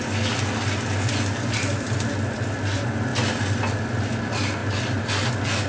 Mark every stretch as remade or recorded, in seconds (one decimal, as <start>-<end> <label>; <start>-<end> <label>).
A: 0.0-5.7 recorded